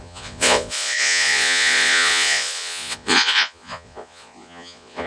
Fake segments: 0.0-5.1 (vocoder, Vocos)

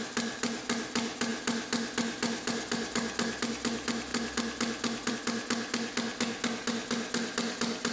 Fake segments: none

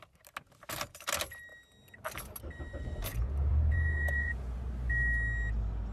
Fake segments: 3.1-4.6 (vocoder, Vocos)

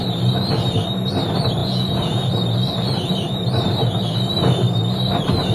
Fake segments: 1.6-2.3 (vocoder, Vocos)

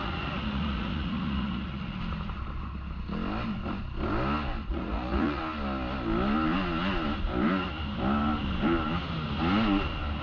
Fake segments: 0.0-2.0 (vocoder, Vocos); 4.7-5.4

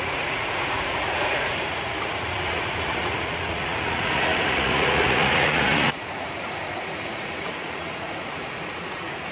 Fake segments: 0.0-9.3 (vocoder, Vocos)